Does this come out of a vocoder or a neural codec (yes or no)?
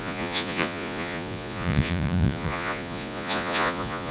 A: yes